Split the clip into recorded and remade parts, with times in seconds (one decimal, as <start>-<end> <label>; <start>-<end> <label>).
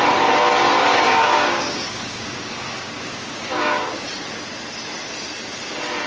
0.0-0.9 recorded; 0.9-4.1 remade; 4.1-6.1 recorded